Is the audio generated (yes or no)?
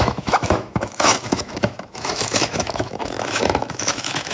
yes